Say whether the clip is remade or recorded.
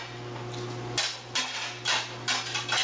recorded